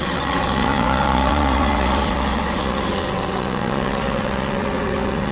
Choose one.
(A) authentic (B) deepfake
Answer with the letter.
B